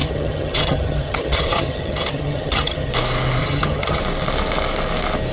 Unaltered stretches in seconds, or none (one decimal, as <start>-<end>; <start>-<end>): 2.9-3.4; 4.0-5.3